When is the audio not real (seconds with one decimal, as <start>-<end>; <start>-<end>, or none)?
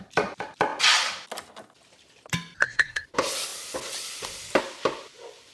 2.6-3.1